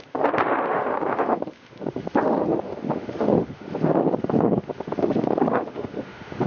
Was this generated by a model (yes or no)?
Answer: yes